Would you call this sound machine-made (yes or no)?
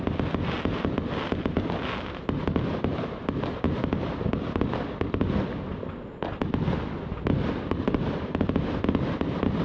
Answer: no